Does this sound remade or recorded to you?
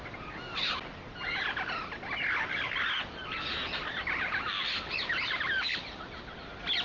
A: remade